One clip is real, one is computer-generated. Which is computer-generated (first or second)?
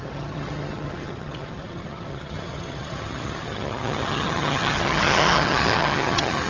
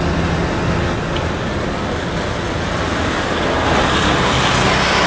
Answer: first